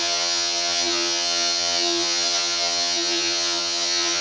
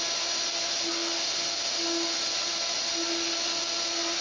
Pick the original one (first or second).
second